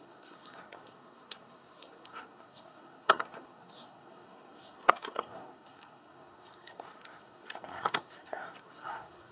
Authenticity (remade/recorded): remade